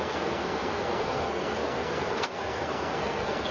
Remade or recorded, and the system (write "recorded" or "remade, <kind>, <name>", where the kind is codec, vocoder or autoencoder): remade, codec, SNAC